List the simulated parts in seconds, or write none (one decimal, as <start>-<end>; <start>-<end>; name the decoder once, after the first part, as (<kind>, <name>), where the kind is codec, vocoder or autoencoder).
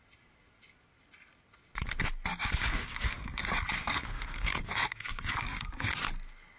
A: 2.3-6.0 (codec, DAC)